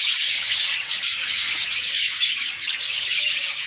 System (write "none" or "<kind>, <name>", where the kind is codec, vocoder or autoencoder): codec, DAC